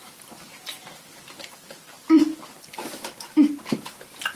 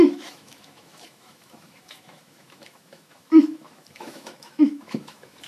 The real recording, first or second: first